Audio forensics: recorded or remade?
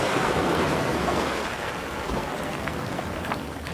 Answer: remade